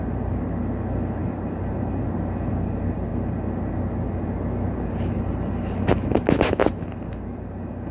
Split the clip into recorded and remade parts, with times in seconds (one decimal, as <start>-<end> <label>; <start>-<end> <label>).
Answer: 0.0-7.9 recorded